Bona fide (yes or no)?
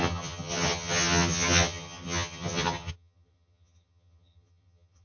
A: no